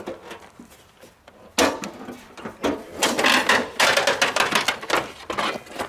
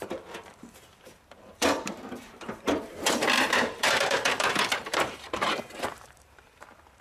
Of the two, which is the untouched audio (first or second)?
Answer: first